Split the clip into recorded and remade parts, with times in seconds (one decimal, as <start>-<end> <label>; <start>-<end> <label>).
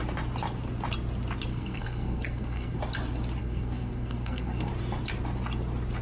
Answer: 0.0-1.5 recorded; 1.5-2.8 remade; 2.8-3.4 recorded; 3.4-4.7 remade; 4.7-6.0 recorded